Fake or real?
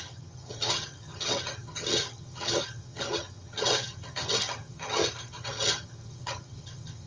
fake